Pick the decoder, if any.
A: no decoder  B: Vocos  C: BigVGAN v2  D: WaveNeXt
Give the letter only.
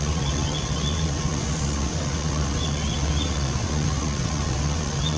D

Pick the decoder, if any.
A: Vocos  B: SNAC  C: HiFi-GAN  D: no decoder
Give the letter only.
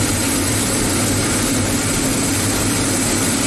D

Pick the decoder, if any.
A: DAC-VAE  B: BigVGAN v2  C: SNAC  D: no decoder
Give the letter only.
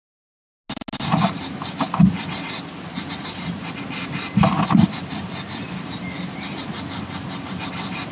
D